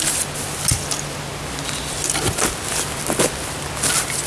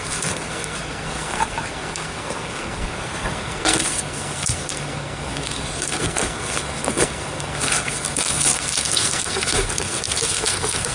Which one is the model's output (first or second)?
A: second